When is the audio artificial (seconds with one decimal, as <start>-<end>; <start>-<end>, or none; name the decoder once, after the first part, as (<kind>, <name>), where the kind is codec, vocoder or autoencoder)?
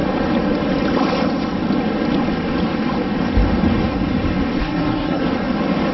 4.6-5.2 (codec, SNAC)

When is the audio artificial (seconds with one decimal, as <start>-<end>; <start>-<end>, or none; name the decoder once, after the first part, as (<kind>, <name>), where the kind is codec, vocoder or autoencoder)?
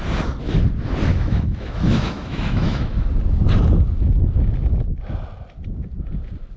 1.1-3.1 (autoencoder, DAC-VAE)